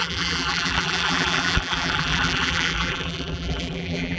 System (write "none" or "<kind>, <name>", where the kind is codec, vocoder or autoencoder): vocoder, BigVGAN v2